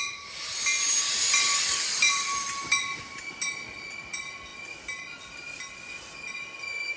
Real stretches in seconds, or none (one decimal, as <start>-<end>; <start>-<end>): 0.0-7.0